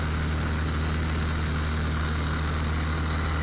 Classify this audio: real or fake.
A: real